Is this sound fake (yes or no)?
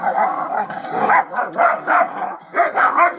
yes